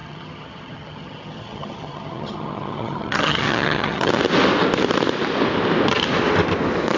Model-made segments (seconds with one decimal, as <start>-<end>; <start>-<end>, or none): 0.0-4.1